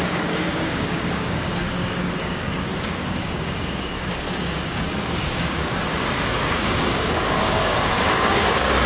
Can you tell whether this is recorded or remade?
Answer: remade